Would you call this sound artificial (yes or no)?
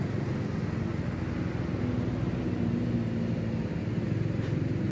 no